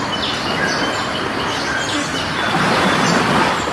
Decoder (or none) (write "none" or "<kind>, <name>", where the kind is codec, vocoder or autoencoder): none